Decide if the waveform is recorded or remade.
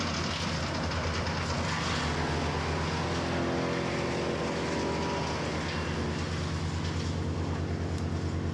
recorded